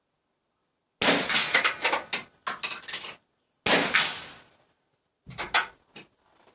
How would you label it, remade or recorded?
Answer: recorded